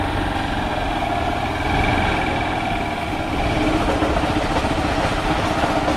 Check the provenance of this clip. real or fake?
real